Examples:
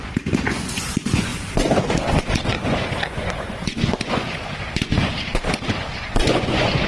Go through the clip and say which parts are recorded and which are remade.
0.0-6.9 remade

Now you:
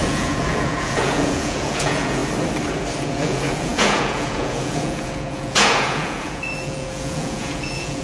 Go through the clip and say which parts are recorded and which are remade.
0.0-2.2 remade; 2.2-3.0 recorded; 3.0-8.0 remade